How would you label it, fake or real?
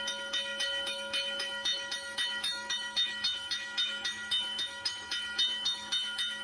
fake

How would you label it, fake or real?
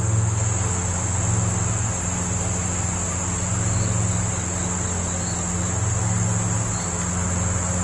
real